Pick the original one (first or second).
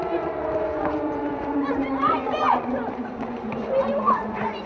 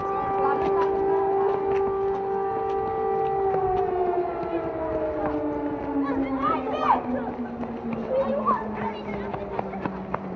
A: second